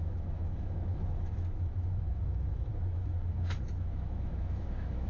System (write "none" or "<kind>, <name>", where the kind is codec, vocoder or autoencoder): autoencoder, DAC-VAE